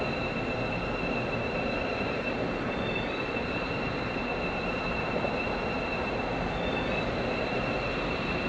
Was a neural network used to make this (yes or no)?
no